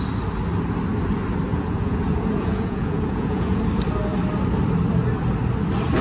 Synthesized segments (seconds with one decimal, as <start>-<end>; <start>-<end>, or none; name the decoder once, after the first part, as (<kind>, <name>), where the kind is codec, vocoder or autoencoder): 1.5-3.6 (vocoder, Vocos)